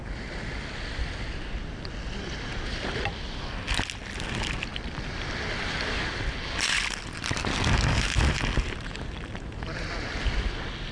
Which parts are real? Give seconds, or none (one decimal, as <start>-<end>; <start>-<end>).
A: 0.0-1.0; 1.9-4.7; 5.2-10.9